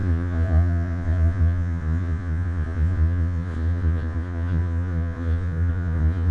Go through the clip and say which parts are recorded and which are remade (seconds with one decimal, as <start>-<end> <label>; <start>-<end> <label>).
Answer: 0.0-6.3 remade